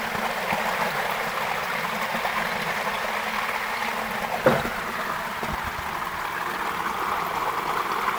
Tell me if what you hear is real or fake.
real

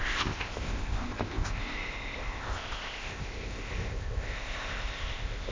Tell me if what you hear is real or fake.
fake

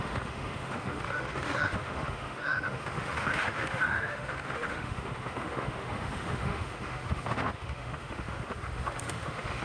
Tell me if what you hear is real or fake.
fake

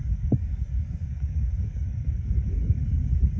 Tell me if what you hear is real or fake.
fake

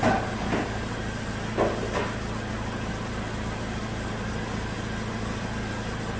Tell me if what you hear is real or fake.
real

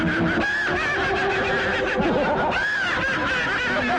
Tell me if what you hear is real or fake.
real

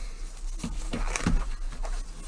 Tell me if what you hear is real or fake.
real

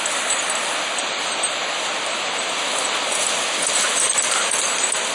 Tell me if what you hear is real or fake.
real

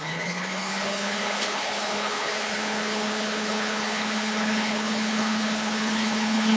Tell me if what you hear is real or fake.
fake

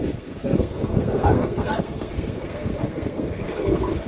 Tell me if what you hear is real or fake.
fake